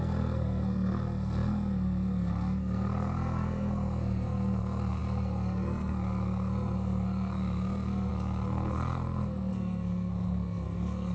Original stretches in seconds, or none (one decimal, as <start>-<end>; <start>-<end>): none

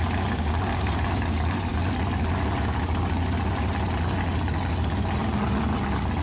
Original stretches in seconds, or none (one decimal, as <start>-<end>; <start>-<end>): 0.0-6.2

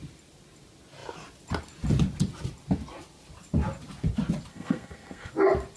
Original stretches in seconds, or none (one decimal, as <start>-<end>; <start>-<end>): 0.0-4.5; 5.3-5.8

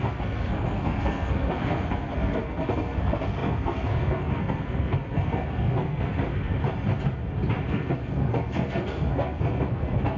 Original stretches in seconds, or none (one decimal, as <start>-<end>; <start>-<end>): 6.5-7.7

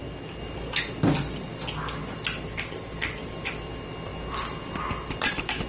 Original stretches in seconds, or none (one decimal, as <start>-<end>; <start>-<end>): 0.0-5.7